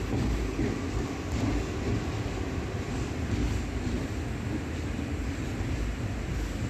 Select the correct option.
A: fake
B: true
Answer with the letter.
B